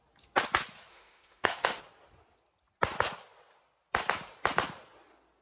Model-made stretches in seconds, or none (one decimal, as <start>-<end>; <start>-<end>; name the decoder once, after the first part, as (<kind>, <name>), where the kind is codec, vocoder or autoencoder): 0.9-1.8 (autoencoder, DAC-VAE)